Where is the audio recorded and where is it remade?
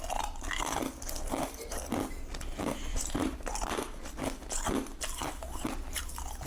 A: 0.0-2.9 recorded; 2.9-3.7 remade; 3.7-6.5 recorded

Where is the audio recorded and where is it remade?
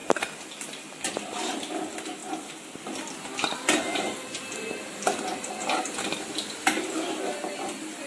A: 0.0-8.1 recorded